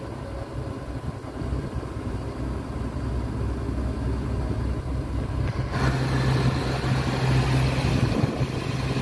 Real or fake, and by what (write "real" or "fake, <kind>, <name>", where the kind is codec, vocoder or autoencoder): real